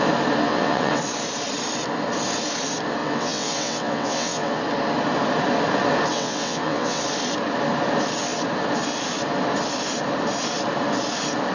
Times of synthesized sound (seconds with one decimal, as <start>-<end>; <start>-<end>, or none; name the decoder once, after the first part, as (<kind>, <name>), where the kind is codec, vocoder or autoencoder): 0.4-1.0 (vocoder, WaveNeXt); 3.0-4.6; 6.1-7.0